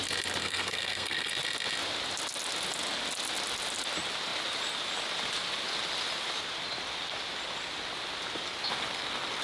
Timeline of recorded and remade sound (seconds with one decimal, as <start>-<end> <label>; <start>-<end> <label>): 0.0-0.4 recorded; 0.4-1.3 remade; 1.3-9.4 recorded